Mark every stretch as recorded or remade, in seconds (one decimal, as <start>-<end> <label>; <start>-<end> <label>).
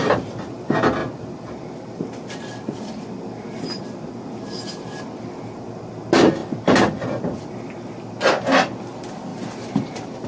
0.0-9.3 recorded; 9.3-10.3 remade